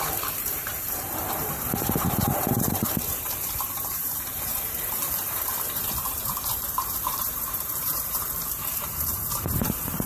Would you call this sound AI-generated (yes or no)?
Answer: yes